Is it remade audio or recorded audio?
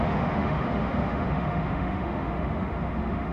remade